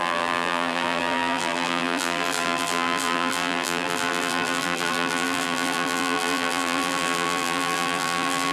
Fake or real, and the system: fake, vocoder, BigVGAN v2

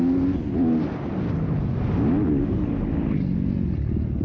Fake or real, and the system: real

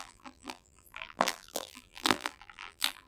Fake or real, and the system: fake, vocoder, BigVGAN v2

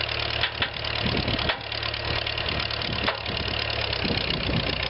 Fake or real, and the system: real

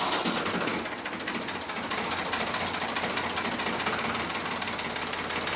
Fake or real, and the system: real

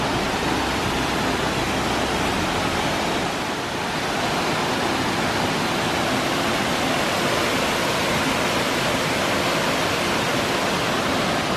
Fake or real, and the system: real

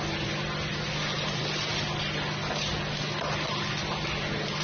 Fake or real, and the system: real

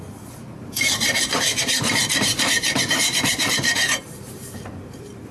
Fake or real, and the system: fake, vocoder, BigVGAN v2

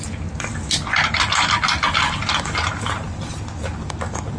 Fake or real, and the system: real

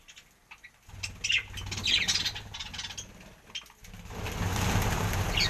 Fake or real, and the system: real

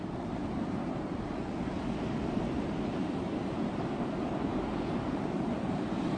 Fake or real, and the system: fake, vocoder, BigVGAN v2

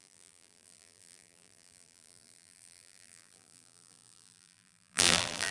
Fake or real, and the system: fake, vocoder, BigVGAN v2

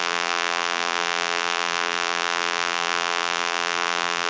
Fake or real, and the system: fake, vocoder, BigVGAN v2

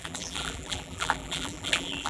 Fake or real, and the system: fake, vocoder, BigVGAN v2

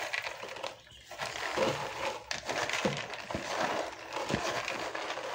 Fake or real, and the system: real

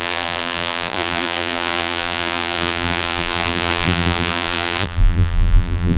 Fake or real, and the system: fake, vocoder, BigVGAN v2